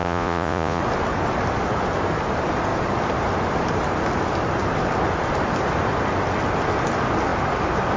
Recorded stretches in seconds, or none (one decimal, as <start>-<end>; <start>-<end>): 0.8-8.0